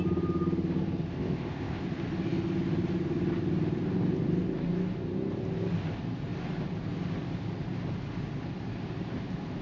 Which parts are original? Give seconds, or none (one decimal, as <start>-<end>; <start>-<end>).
0.0-1.1; 1.8-9.6